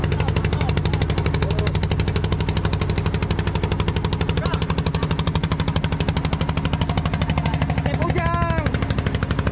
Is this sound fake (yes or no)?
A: no